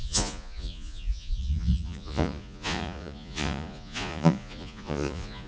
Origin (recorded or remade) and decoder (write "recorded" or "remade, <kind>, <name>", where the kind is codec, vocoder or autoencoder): remade, vocoder, Vocos